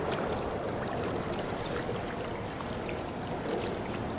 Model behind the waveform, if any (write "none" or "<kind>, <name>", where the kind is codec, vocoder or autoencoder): vocoder, BigVGAN v2